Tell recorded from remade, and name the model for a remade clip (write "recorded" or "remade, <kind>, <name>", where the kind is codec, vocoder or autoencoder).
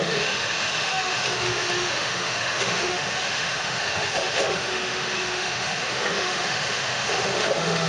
remade, autoencoder, DAC-VAE